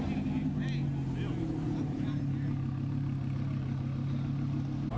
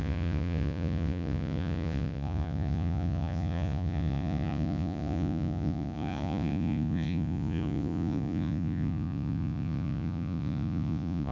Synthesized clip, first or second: second